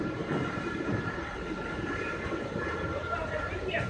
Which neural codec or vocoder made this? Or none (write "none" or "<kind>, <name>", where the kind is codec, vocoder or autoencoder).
vocoder, BigVGAN v2